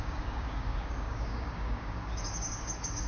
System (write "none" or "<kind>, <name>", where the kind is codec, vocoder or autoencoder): codec, DAC